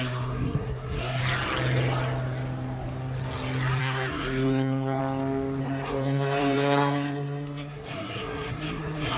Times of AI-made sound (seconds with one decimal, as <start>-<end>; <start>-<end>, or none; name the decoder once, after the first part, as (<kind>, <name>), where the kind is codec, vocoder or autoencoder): 0.0-1.2 (codec, SNAC); 3.8-5.0; 5.6-9.2